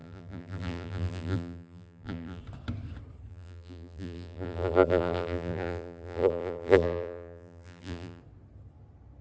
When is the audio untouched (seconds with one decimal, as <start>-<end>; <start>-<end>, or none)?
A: 2.4-3.3; 8.2-9.2